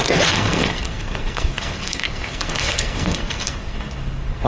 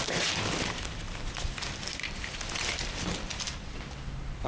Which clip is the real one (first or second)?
second